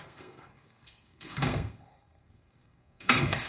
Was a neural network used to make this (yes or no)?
yes